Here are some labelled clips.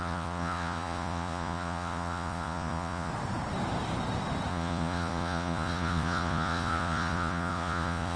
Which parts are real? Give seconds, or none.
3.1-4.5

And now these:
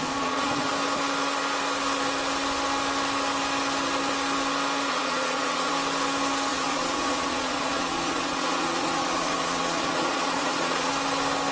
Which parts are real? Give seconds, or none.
0.7-4.9; 5.7-6.5; 10.9-11.5

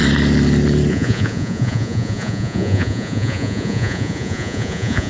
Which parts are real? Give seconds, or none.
0.0-0.9

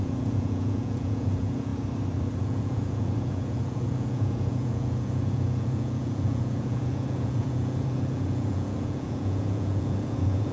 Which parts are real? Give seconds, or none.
1.7-2.4

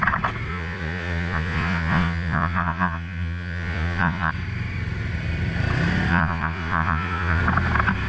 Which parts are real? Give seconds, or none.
0.0-0.5; 4.3-6.1; 7.4-8.1

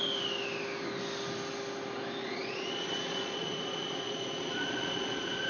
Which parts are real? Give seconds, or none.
0.0-2.2

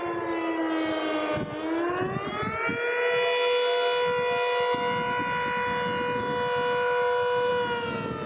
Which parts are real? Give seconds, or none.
0.0-8.3

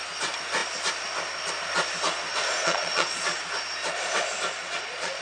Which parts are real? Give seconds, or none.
0.0-2.3; 3.4-4.6